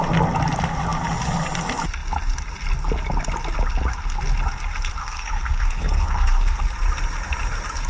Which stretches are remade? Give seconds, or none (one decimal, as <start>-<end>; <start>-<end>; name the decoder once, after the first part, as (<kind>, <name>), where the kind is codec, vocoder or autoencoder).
5.0-6.6 (codec, SNAC)